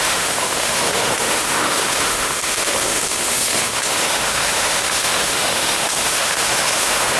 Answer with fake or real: fake